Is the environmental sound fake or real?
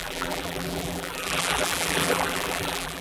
fake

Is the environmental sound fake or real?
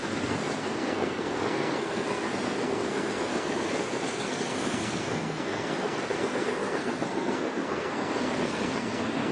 fake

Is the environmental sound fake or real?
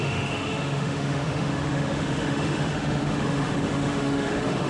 fake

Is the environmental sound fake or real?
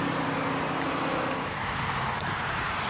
real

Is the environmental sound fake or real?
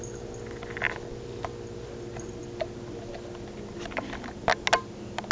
real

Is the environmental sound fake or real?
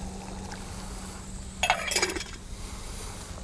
real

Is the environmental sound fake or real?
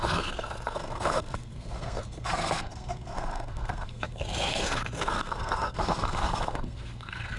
fake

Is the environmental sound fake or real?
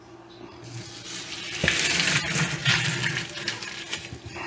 real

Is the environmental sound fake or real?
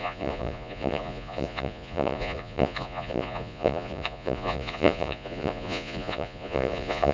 fake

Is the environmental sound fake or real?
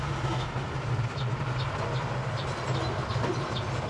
real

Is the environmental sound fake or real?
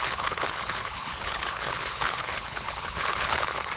fake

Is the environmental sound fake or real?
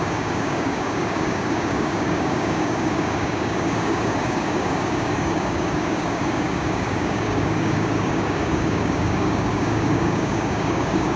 fake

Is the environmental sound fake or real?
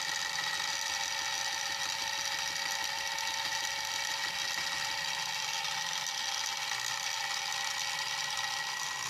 real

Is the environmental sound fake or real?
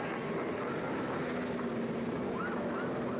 real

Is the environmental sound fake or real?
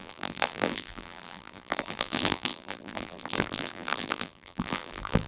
fake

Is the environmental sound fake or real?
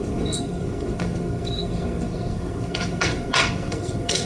fake